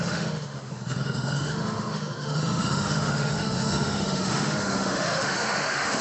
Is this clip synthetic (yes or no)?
yes